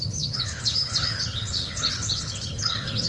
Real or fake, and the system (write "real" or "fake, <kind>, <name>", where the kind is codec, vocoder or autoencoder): fake, codec, HILCodec